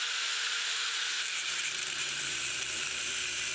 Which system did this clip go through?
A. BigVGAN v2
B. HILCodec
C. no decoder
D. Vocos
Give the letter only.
A